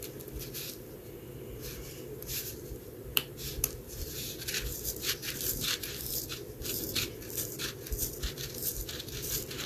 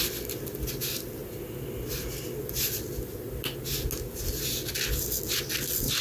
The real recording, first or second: second